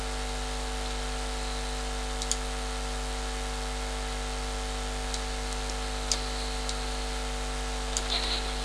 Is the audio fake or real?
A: real